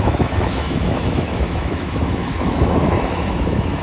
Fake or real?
fake